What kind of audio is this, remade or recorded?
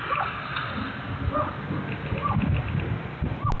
recorded